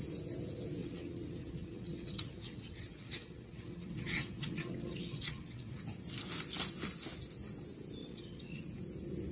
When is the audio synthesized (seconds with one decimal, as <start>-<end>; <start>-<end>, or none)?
0.8-5.8; 8.0-8.6